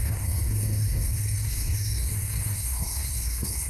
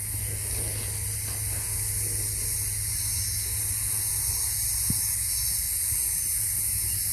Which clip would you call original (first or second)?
second